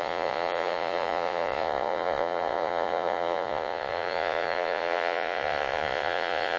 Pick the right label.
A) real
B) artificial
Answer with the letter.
B